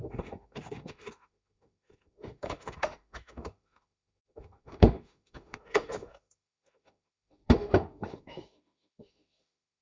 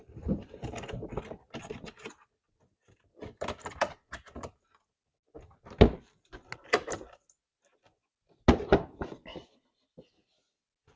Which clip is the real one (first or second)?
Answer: second